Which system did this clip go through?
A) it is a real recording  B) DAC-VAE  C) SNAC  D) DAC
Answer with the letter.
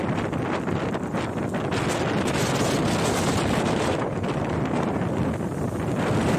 A